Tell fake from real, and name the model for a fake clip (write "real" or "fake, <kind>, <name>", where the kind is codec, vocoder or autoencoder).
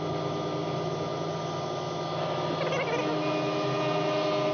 real